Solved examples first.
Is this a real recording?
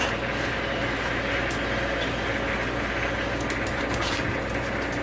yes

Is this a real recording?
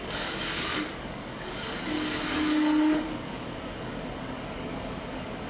no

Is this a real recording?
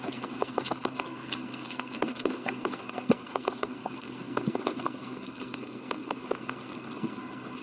no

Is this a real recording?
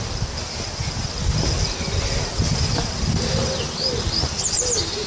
yes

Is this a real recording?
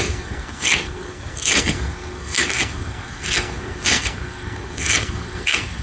no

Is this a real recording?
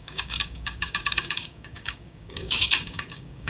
no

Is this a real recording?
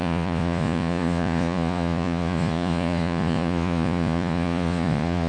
no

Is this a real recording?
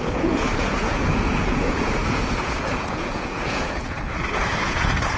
no